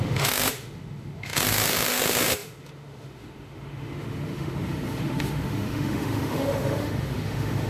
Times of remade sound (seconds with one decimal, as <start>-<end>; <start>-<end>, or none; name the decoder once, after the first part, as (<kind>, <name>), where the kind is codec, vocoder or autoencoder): 0.0-7.7 (autoencoder, DAC-VAE)